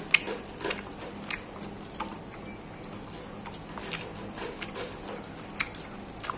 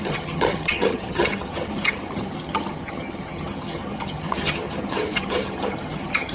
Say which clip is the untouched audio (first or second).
first